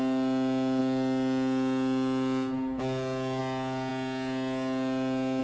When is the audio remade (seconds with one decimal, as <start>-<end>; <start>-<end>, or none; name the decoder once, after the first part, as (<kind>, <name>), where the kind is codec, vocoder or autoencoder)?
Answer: none